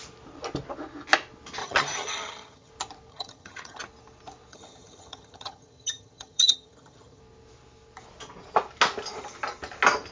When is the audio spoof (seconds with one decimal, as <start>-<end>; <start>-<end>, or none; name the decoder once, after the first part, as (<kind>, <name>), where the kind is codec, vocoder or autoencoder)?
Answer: 1.6-2.7 (vocoder, HiFi-GAN); 3.1-3.8; 4.5-7.2